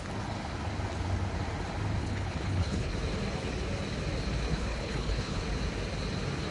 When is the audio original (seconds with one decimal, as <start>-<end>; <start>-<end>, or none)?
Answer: 0.0-2.0; 2.9-4.5; 5.4-6.5